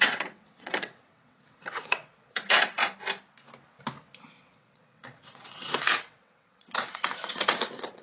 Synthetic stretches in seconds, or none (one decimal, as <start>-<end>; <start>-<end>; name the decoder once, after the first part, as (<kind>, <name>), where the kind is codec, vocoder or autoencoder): 0.0-2.8 (vocoder, WaveNeXt); 4.2-8.0